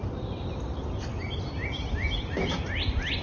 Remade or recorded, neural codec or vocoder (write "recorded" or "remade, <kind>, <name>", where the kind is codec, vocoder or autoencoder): recorded